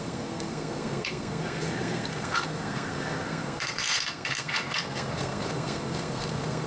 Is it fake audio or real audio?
fake